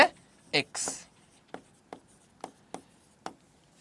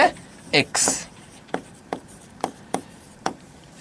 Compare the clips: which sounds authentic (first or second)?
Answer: first